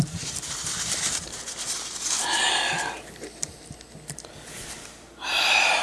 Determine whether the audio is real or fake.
fake